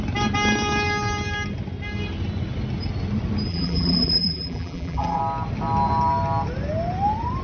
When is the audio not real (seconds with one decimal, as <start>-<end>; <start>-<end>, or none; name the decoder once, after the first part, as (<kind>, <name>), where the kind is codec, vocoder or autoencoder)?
3.5-5.2 (vocoder, BigVGAN v2)